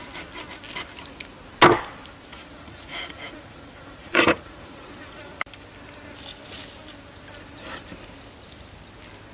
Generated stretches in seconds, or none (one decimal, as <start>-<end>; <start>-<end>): 2.3-5.4